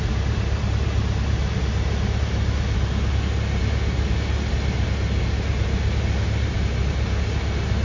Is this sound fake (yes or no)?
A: no